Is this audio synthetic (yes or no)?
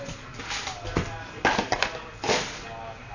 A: no